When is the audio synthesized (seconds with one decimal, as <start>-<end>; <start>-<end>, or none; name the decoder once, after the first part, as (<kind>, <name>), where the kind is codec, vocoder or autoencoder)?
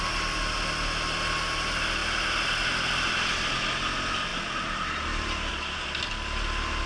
none